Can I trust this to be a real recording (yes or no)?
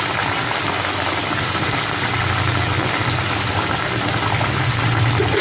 yes